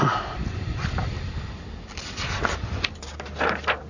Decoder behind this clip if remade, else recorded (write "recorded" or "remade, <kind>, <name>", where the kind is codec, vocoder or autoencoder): recorded